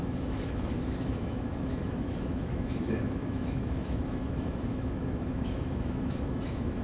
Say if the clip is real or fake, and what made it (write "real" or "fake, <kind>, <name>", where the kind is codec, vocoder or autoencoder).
fake, autoencoder, DAC-VAE